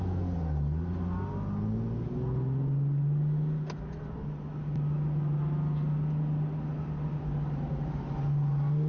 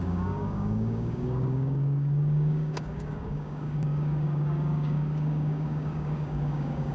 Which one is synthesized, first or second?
second